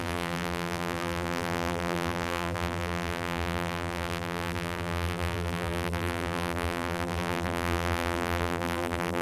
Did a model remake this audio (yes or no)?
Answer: yes